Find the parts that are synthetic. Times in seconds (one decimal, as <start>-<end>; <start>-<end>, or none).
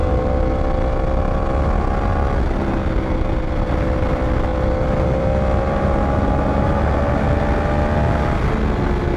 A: 0.0-2.6; 4.5-6.9